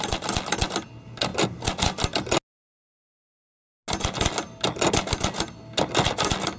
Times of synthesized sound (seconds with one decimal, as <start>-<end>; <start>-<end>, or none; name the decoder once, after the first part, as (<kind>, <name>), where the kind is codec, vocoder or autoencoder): none